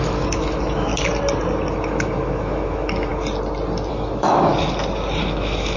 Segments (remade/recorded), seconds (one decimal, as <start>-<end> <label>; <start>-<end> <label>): 0.0-0.9 remade; 0.9-1.7 recorded; 1.7-3.1 remade; 3.1-3.9 recorded; 3.9-4.5 remade; 4.5-5.2 recorded; 5.2-5.8 remade